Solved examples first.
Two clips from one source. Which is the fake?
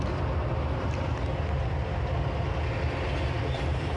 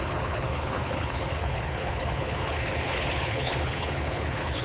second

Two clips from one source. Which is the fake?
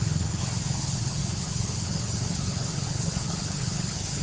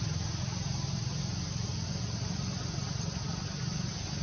first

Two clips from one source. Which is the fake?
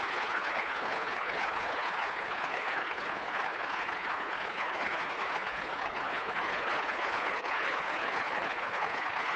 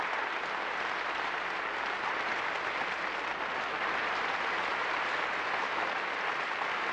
first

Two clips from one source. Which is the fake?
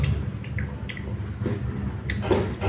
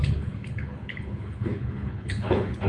second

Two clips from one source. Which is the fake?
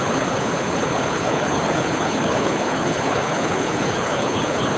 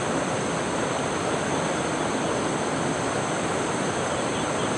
first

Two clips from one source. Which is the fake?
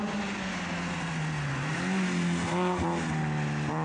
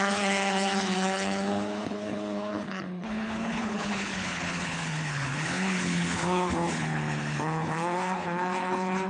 second